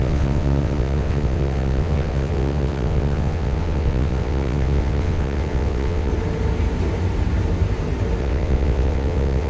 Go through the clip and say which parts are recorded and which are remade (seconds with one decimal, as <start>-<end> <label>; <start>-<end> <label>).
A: 0.0-6.1 remade; 6.1-8.2 recorded; 8.2-9.5 remade